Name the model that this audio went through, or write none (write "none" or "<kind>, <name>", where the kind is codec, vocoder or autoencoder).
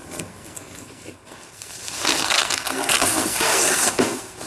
codec, SNAC